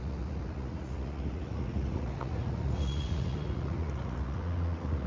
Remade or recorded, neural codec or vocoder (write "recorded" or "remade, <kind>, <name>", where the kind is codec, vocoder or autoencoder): remade, vocoder, Vocos